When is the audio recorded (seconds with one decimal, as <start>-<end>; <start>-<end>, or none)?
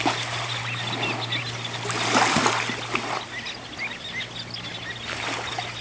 0.0-5.8